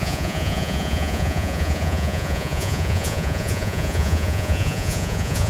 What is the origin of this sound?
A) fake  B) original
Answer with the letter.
A